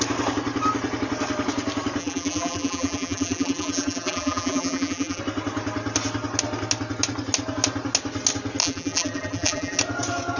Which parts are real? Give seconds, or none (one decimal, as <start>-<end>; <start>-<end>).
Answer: 0.0-2.0; 5.2-8.6; 9.8-10.4